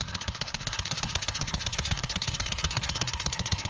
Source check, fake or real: fake